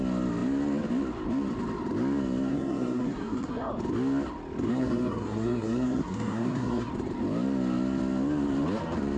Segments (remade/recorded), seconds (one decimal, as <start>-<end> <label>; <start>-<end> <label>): 0.0-2.5 recorded; 2.5-3.7 remade; 3.7-4.7 recorded; 4.7-6.9 remade; 6.9-9.2 recorded